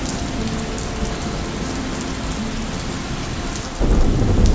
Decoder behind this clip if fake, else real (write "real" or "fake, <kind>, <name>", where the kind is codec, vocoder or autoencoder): real